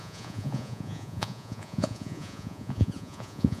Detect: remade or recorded remade